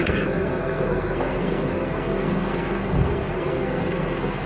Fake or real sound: fake